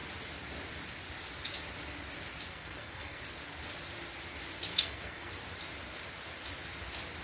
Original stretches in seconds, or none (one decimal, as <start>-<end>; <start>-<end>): 0.0-2.5; 3.2-4.7; 5.3-7.2